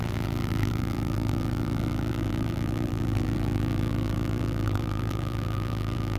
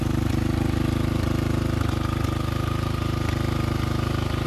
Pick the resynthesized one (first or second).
first